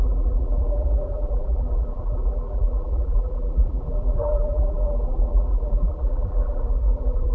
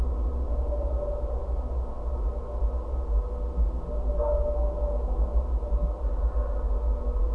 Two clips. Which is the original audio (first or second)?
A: second